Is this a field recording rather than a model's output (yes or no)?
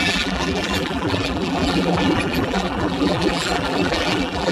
no